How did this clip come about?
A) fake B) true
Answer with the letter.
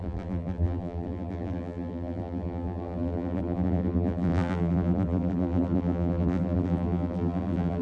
A